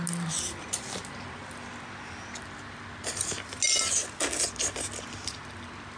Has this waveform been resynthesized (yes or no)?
no